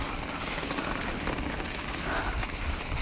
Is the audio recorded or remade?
recorded